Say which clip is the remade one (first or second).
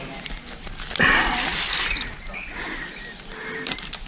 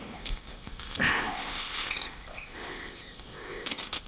second